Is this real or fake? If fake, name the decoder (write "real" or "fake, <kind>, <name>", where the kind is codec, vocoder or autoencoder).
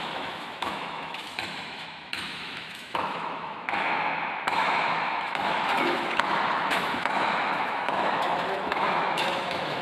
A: fake, autoencoder, DAC-VAE